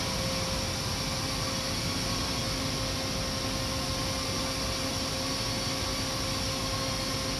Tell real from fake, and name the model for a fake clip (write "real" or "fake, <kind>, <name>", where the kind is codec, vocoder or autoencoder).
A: real